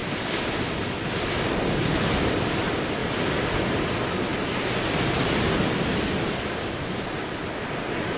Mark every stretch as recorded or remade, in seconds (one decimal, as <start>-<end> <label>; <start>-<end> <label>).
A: 0.0-8.2 recorded

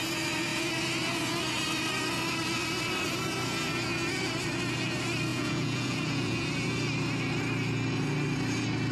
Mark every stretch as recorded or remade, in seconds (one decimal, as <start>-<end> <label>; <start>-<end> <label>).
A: 0.0-5.3 recorded; 5.3-6.4 remade; 6.4-8.9 recorded